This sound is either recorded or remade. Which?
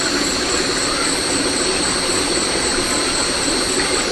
recorded